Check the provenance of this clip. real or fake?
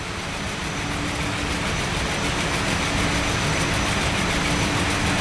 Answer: real